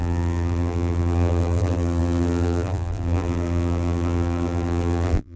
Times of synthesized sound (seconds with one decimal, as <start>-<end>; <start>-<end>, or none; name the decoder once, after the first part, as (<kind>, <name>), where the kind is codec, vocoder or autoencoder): 0.0-5.4 (vocoder, BigVGAN v2)